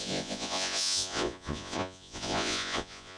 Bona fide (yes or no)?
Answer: no